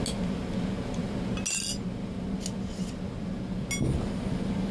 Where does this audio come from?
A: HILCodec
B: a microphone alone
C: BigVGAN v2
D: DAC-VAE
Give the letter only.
B